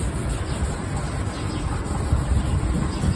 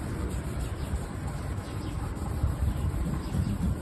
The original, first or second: first